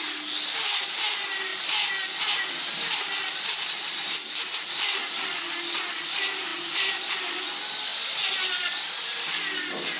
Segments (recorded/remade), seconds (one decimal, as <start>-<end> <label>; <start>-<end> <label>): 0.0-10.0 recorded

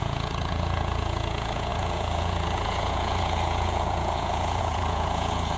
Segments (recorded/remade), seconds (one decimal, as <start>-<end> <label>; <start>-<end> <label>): 0.0-5.6 remade

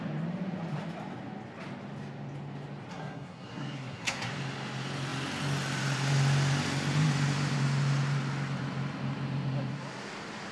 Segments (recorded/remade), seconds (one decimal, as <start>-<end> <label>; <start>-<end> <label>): 0.0-2.9 recorded; 2.9-4.3 remade; 4.3-10.5 recorded

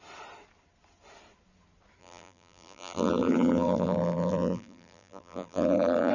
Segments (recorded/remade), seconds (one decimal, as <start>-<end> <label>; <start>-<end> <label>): 0.0-2.0 recorded; 2.0-6.1 remade

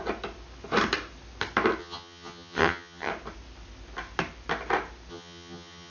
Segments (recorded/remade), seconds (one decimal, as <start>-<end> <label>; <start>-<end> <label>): 0.0-1.8 recorded; 1.8-3.1 remade; 3.1-5.1 recorded; 5.1-5.9 remade